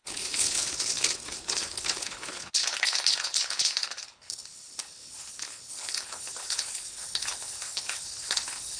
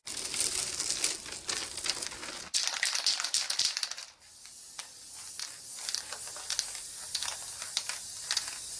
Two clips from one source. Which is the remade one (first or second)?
first